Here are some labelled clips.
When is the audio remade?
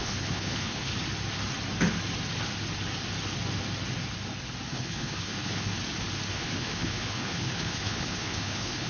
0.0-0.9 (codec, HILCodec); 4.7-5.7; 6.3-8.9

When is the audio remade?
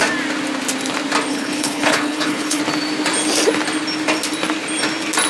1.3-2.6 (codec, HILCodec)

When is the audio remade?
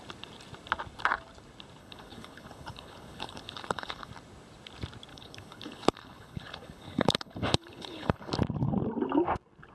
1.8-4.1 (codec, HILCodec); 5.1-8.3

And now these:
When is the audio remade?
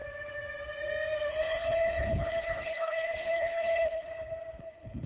1.3-4.1 (codec, HILCodec); 4.6-5.1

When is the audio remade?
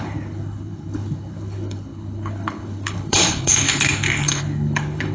0.0-5.1 (codec, HILCodec)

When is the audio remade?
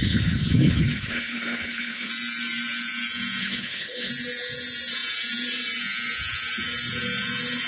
0.0-2.1 (codec, HILCodec); 3.4-4.1